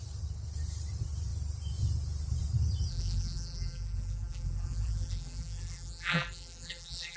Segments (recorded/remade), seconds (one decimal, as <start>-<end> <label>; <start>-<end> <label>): 0.0-2.9 recorded; 2.9-7.2 remade